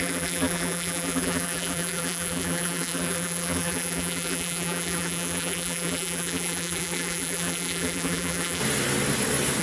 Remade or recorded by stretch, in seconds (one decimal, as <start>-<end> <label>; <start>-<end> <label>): 0.0-8.6 remade; 8.6-9.6 recorded